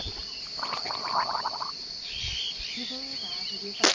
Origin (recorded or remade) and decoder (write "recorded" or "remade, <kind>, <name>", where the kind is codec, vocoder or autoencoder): recorded